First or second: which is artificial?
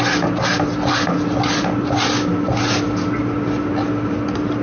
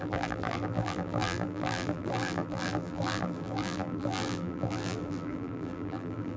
second